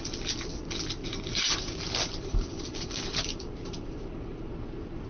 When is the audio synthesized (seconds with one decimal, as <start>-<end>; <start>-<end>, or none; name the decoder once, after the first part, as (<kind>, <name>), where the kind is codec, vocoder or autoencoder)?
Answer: 1.0-4.1 (vocoder, BigVGAN v2)